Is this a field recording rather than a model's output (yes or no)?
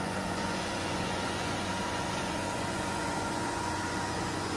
no